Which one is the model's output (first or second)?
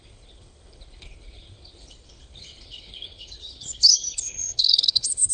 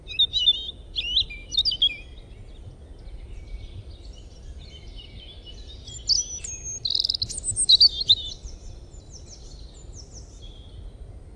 first